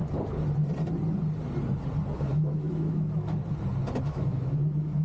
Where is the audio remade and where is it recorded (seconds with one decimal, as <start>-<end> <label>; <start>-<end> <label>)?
0.0-2.2 recorded; 2.2-3.4 remade; 3.4-4.0 recorded; 4.0-5.0 remade